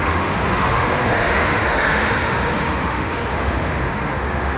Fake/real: fake